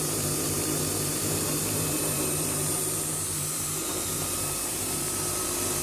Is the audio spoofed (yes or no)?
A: yes